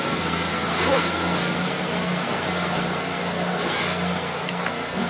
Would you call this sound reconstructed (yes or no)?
yes